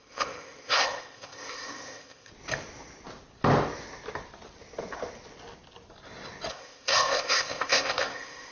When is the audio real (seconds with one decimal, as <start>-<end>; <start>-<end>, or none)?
2.3-6.5